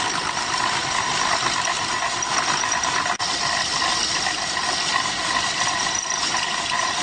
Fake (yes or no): no